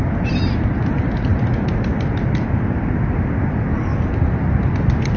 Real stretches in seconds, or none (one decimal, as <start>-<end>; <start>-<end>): 0.0-5.2